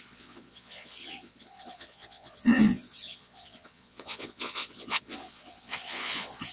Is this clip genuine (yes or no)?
no